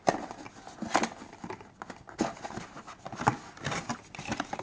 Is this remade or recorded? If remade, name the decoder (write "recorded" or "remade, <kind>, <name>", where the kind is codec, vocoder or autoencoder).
recorded